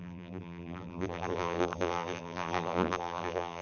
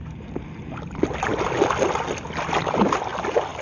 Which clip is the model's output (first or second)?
first